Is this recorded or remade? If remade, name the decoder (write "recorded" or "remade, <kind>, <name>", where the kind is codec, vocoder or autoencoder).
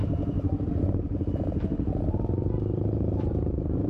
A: remade, vocoder, BigVGAN v2